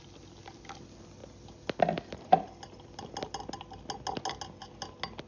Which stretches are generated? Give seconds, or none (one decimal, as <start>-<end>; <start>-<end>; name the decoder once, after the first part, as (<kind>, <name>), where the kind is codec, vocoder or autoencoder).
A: none